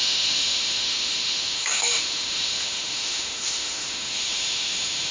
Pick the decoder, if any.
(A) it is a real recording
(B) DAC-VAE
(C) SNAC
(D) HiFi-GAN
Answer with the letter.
B